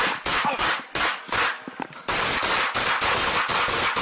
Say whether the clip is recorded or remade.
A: recorded